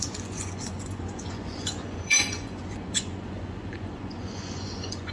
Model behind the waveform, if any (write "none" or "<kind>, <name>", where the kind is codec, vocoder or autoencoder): vocoder, Vocos